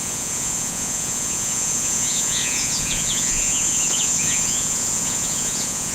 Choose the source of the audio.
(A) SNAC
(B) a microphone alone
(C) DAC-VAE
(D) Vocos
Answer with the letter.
D